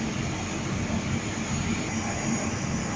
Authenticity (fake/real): real